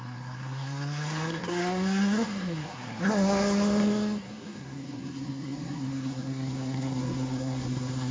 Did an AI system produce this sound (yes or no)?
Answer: yes